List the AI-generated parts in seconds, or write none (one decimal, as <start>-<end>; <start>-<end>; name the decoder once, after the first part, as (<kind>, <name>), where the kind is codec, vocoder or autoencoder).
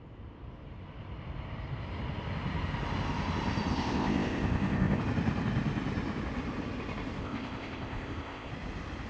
3.7-5.0 (codec, ZipCodec); 7.2-8.5